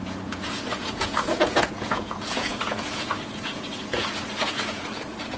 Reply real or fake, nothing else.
fake